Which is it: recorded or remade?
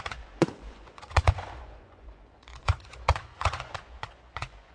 remade